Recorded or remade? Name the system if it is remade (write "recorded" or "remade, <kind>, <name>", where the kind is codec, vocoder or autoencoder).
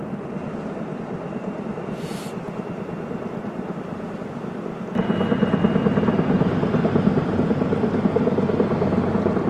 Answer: recorded